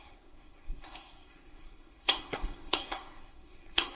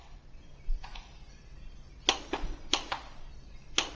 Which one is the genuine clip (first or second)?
second